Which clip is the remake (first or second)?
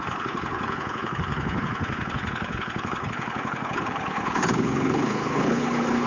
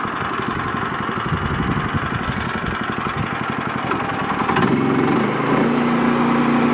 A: first